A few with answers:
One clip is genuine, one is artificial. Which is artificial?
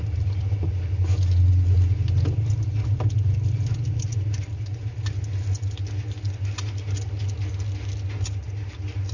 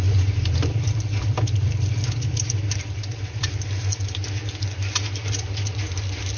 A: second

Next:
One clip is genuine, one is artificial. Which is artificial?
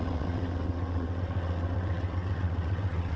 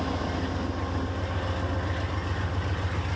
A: first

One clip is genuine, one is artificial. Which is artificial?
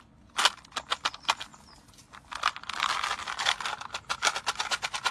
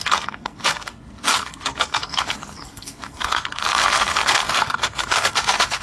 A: second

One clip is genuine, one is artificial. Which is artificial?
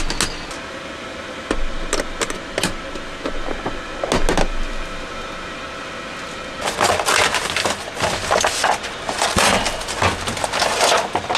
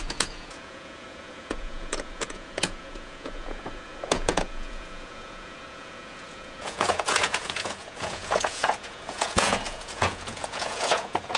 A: second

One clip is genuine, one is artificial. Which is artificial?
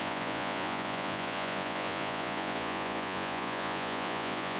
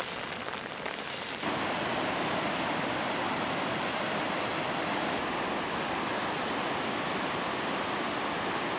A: first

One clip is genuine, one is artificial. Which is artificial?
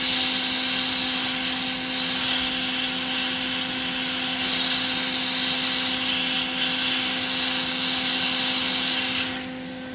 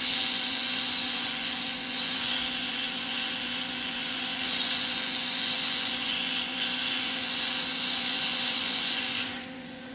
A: second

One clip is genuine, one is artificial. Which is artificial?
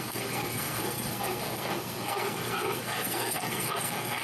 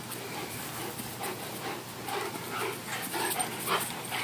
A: first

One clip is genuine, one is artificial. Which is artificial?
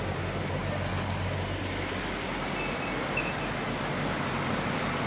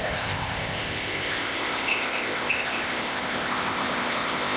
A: second